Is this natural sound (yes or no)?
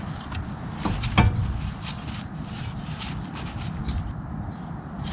yes